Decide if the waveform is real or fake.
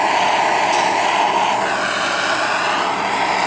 real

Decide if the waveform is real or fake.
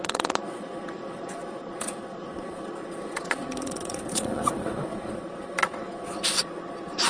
fake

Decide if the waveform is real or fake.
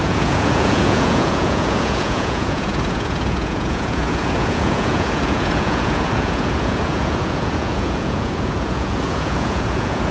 fake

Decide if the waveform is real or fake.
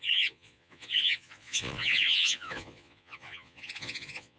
fake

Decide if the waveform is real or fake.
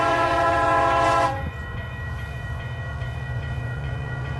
fake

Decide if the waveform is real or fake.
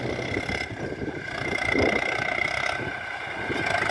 real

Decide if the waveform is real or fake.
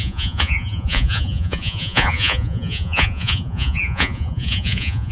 fake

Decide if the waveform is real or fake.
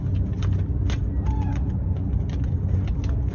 real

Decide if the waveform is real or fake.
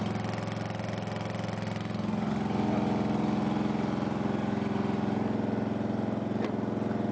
real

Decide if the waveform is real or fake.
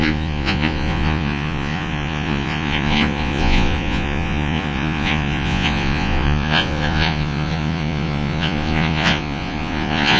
fake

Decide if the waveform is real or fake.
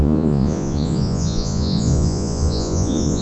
fake